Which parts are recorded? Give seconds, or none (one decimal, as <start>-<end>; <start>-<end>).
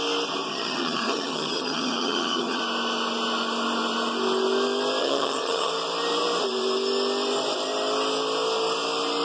0.0-0.5; 2.6-5.0; 5.7-9.2